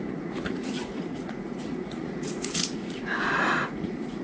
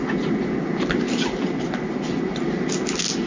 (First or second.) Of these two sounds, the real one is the second